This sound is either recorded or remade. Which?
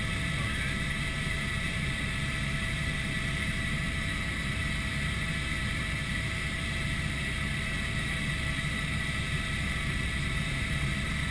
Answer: remade